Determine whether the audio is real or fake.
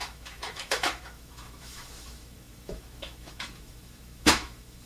fake